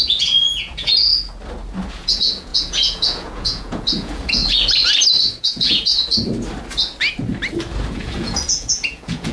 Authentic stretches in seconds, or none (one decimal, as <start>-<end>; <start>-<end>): 1.1-1.9; 4.4-5.4; 5.9-7.9